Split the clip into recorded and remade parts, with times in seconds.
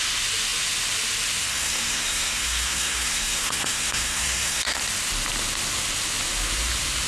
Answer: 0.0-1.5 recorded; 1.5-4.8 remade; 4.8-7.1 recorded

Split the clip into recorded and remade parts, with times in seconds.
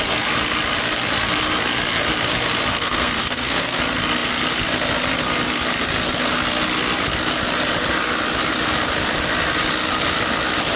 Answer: 0.0-2.7 recorded; 2.7-3.8 remade; 3.8-10.8 recorded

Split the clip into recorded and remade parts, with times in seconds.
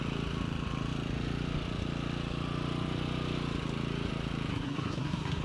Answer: 0.0-4.5 recorded; 4.5-5.4 remade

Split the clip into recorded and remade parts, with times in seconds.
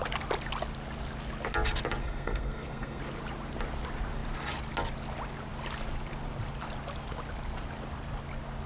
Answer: 0.0-2.0 recorded; 2.0-3.0 remade; 3.0-8.7 recorded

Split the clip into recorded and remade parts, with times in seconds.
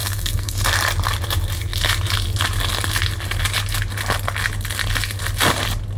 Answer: 0.0-0.6 remade; 0.6-6.0 recorded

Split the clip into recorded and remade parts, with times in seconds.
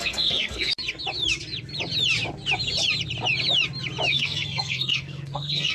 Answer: 0.0-0.7 remade; 0.7-4.1 recorded; 4.1-5.7 remade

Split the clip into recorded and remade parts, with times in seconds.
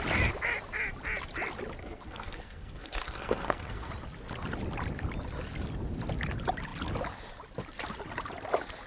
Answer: 0.0-1.8 recorded; 1.8-3.9 remade; 3.9-8.9 recorded